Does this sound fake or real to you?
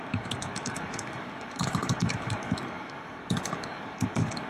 fake